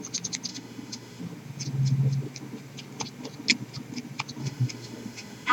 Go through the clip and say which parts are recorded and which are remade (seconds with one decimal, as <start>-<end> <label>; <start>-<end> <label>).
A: 0.0-0.5 recorded; 0.5-1.2 remade; 1.2-4.4 recorded; 4.4-5.5 remade

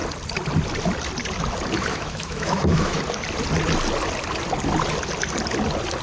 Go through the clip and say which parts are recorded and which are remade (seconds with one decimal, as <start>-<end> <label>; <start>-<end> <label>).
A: 0.0-1.9 recorded; 1.9-3.0 remade; 3.0-6.0 recorded

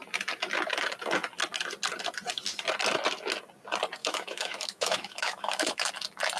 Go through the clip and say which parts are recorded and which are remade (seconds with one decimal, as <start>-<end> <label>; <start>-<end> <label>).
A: 0.0-4.0 recorded; 4.0-5.9 remade; 5.9-6.4 recorded

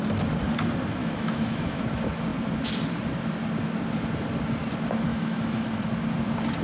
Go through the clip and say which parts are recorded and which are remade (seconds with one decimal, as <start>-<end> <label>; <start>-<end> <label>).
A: 0.0-1.0 recorded; 1.0-1.8 remade; 1.8-5.1 recorded; 5.1-5.7 remade; 5.7-6.6 recorded